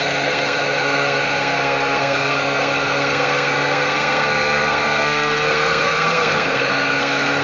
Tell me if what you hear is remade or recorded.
remade